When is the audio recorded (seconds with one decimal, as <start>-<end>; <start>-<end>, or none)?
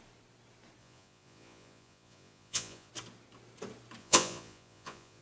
0.0-0.8; 2.9-4.0